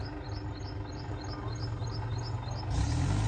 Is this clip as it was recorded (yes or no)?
yes